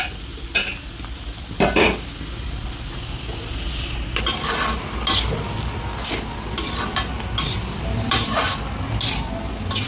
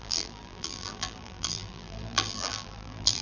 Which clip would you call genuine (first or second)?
first